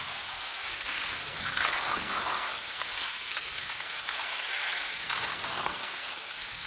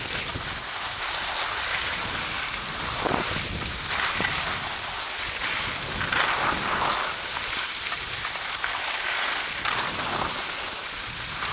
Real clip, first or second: second